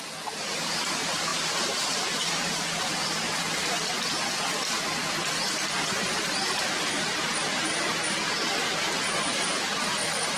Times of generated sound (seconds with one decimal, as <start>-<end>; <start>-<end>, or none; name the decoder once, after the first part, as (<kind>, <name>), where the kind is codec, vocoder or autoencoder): none